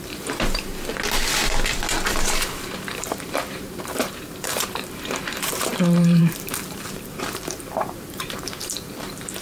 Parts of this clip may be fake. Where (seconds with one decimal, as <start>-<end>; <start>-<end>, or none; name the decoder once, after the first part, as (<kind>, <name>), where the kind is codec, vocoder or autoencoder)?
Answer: 0.0-0.7 (vocoder, BigVGAN v2); 2.5-9.4